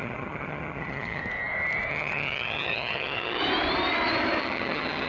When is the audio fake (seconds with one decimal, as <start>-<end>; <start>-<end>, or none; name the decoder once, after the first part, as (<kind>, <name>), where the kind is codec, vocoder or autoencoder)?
0.0-1.2 (vocoder, HiFi-GAN); 1.9-3.4; 4.4-5.1